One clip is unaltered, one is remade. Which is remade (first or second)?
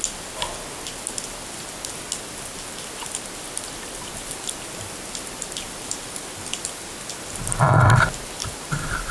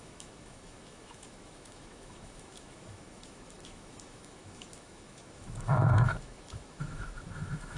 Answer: second